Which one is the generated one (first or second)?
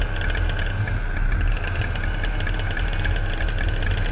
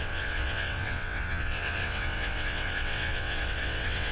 second